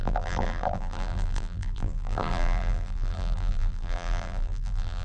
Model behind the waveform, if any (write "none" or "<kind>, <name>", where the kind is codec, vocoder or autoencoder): vocoder, BigVGAN v2